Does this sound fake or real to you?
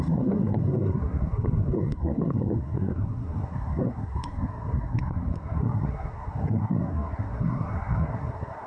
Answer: fake